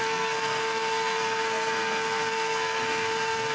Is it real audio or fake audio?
fake